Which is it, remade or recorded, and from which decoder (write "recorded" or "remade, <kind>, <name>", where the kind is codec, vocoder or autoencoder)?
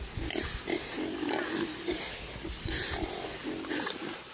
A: recorded